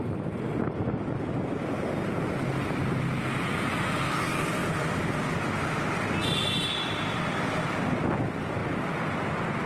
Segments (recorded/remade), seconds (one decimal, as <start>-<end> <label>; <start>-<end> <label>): 0.0-9.7 recorded

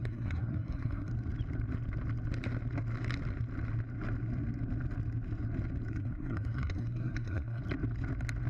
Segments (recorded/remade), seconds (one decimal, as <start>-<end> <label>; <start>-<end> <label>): 0.0-1.1 remade; 1.1-5.9 recorded; 5.9-7.6 remade; 7.6-8.5 recorded

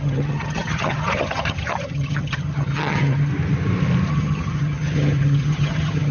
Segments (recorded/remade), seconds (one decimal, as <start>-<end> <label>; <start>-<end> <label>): 0.0-3.3 remade; 3.3-4.1 recorded; 4.1-6.1 remade

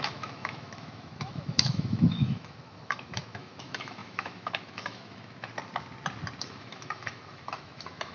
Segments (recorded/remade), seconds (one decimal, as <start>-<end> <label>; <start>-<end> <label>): 0.0-5.5 remade; 5.5-6.4 recorded; 6.4-8.1 remade

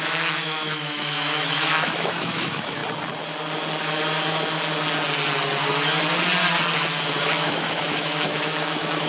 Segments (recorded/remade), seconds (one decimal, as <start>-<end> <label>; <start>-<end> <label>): 0.0-2.8 remade; 2.8-7.2 recorded; 7.2-9.1 remade

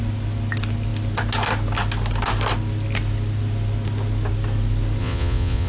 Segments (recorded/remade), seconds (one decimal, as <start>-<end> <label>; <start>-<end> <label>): 0.0-5.0 recorded; 5.0-5.7 remade

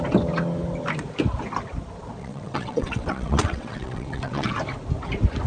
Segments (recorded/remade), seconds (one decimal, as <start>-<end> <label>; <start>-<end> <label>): 0.0-2.2 recorded; 2.2-4.5 remade; 4.5-5.5 recorded

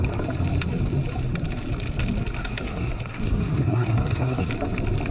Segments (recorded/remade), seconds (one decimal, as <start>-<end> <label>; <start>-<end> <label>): 0.0-2.4 recorded; 2.4-4.5 remade; 4.5-5.1 recorded